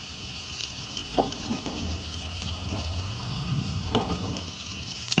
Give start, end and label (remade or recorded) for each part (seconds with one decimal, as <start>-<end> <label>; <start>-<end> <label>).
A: 0.0-5.2 remade

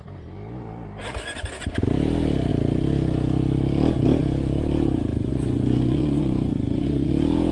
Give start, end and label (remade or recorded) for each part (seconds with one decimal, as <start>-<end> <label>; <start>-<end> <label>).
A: 0.0-5.1 recorded; 5.1-7.1 remade; 7.1-7.5 recorded

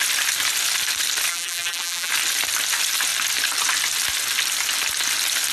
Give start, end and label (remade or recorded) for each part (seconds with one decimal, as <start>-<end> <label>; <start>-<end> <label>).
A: 0.0-1.3 recorded; 1.3-2.1 remade; 2.1-5.5 recorded